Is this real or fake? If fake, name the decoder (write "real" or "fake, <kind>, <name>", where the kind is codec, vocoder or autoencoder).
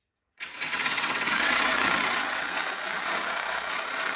fake, vocoder, WaveNeXt